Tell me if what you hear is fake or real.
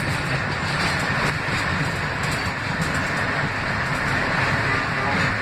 real